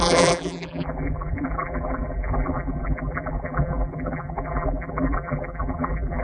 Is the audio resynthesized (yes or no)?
yes